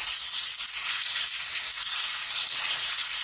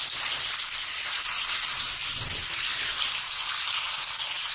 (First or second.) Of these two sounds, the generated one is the first